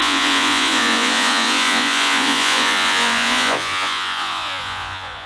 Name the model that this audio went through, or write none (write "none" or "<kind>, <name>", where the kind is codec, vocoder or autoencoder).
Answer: vocoder, Vocos